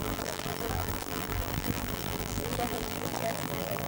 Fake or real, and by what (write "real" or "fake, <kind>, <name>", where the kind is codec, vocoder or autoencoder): fake, vocoder, BigVGAN v2